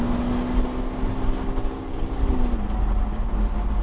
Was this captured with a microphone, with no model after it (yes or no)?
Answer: yes